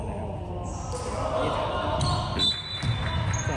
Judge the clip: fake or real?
real